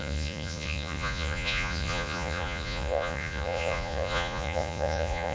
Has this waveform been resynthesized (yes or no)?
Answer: yes